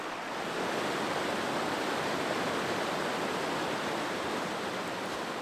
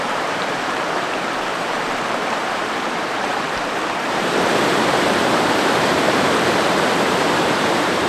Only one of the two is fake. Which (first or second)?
second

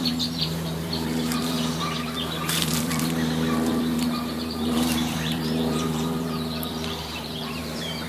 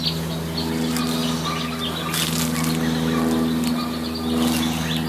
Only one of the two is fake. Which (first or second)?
first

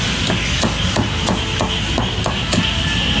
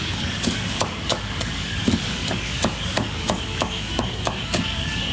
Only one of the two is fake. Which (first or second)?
second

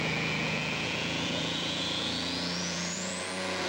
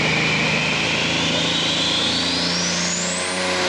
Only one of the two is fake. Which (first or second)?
first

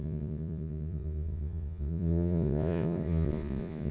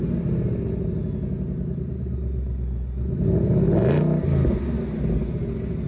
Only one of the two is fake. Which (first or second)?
first